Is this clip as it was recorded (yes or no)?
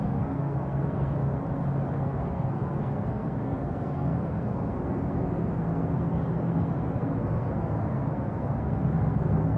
no